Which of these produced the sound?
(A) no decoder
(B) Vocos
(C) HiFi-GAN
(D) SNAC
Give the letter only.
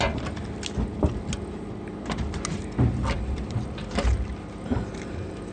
A